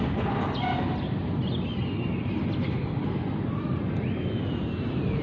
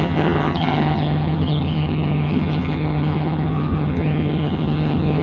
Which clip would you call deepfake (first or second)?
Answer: second